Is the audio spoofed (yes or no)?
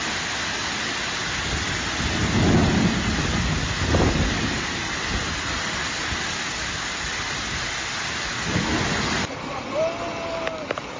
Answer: no